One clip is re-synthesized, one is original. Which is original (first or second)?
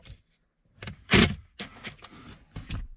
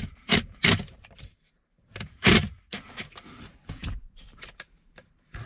first